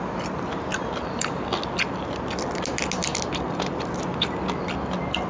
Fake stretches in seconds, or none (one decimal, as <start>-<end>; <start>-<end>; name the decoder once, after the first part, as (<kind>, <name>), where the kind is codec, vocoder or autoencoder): none